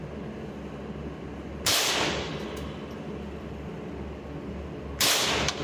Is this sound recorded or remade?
recorded